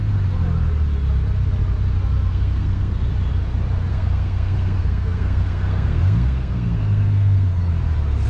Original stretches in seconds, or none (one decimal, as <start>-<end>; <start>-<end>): 0.0-2.3; 3.1-3.9; 7.7-8.3